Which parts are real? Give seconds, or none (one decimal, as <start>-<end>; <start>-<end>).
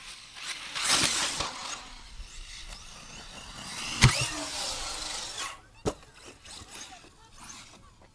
0.0-8.1